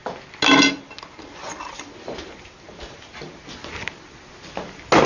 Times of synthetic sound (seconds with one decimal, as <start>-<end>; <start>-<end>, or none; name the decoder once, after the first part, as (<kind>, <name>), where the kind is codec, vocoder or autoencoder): none